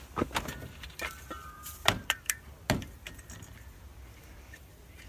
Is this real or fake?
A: real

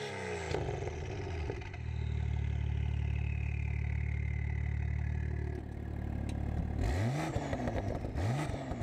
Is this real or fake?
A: real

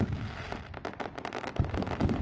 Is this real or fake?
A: real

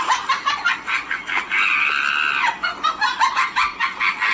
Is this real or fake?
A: real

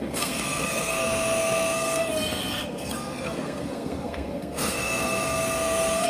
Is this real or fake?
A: fake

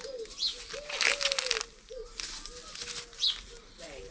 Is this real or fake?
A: real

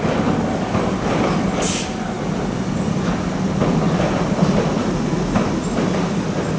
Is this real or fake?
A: real